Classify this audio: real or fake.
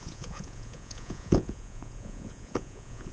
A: fake